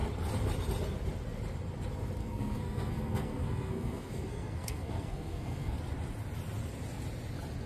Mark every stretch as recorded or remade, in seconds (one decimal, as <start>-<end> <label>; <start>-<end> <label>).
0.0-2.2 recorded; 2.2-5.8 remade; 5.8-7.7 recorded